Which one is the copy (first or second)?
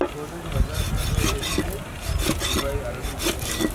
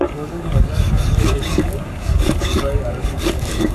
second